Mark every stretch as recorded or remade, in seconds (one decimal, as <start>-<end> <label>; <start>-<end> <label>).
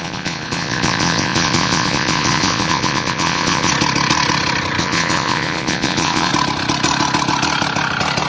0.0-3.7 remade; 3.7-4.8 recorded; 4.8-6.3 remade; 6.3-8.3 recorded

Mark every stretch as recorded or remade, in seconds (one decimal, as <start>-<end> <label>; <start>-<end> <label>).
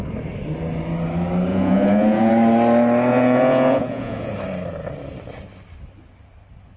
0.0-1.5 recorded; 1.5-2.3 remade; 2.3-3.1 recorded; 3.1-4.3 remade; 4.3-6.8 recorded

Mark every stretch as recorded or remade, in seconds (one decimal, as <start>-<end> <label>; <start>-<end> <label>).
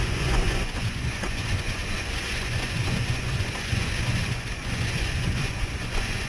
0.0-6.3 remade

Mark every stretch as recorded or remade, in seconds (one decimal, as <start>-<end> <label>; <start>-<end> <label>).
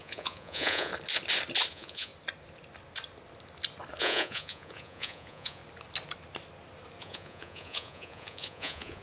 0.0-0.9 remade; 0.9-1.7 recorded; 1.7-2.1 remade; 2.1-4.0 recorded; 4.0-5.6 remade; 5.6-7.0 recorded; 7.0-9.0 remade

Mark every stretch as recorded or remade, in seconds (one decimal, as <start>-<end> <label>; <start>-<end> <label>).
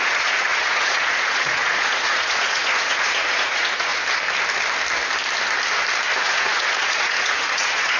0.0-3.9 remade; 3.9-6.1 recorded; 6.1-8.0 remade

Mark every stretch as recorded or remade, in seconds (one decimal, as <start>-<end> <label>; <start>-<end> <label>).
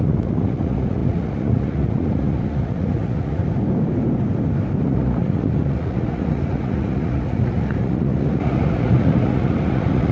0.0-3.4 remade; 3.4-4.8 recorded; 4.8-10.1 remade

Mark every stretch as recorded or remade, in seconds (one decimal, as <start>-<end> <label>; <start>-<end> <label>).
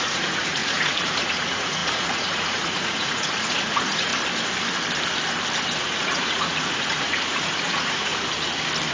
0.0-4.1 remade; 4.1-5.8 recorded; 5.8-8.1 remade; 8.1-8.9 recorded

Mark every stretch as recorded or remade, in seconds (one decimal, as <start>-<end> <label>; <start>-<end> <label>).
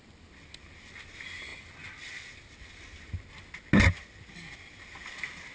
0.0-5.5 recorded